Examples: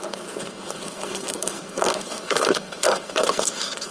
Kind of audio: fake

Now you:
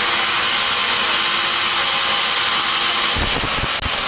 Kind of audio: real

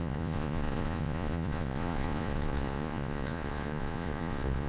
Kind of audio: fake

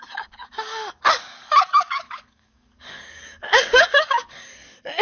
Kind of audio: fake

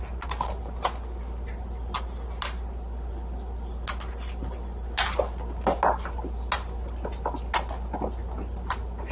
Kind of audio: real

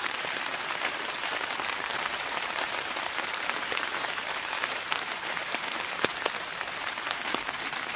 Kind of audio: fake